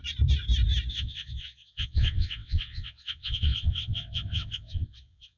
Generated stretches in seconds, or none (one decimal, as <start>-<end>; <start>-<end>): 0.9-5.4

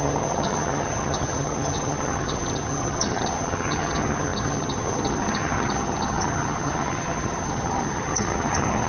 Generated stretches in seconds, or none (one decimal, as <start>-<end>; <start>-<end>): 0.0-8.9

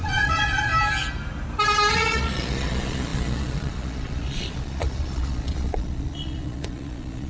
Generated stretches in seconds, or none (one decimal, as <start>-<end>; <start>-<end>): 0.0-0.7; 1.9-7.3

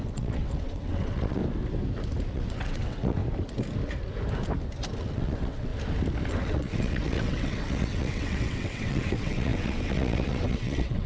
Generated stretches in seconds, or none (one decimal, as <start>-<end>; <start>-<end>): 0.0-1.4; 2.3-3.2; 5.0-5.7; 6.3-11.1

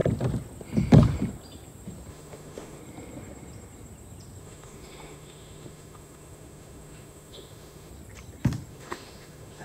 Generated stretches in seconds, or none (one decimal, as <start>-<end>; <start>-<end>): 2.1-2.8; 4.4-7.9; 8.7-9.6